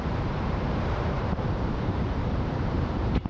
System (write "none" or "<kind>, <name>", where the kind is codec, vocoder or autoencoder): vocoder, BigVGAN v2